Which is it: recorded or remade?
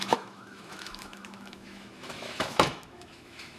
remade